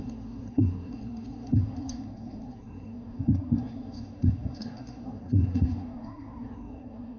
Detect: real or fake fake